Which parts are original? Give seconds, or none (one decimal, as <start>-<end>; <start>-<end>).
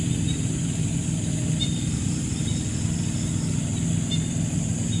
2.5-4.1